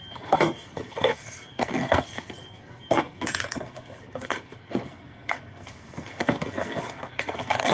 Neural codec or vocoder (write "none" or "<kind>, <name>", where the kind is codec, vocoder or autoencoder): codec, SNAC